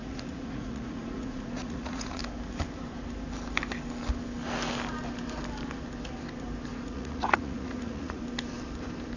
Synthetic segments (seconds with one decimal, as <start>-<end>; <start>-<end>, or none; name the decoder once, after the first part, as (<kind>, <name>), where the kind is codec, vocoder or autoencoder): 0.0-2.2 (vocoder, Vocos); 6.7-8.2